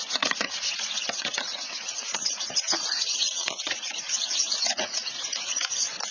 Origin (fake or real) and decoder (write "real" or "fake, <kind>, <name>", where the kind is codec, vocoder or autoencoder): fake, vocoder, Vocos